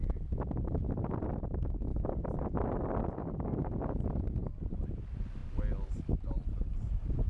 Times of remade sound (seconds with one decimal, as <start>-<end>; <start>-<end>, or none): none